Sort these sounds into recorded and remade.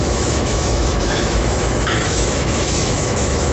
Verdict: remade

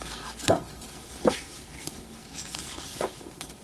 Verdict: remade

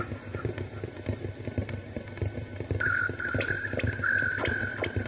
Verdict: remade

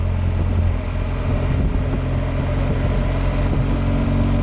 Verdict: recorded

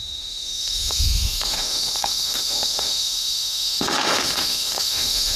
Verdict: remade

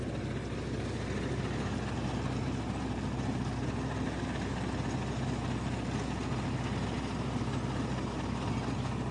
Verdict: recorded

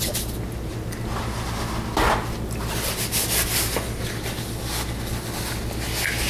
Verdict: recorded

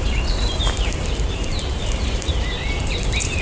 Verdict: remade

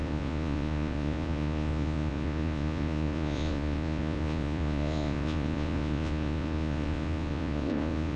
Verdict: remade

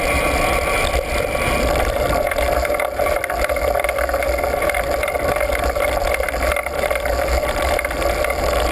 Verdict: recorded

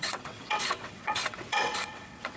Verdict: remade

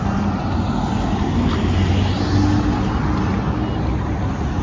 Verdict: recorded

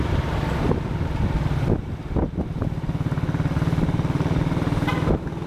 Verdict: recorded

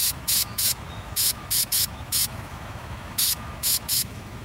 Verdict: remade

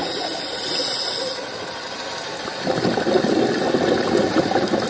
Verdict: recorded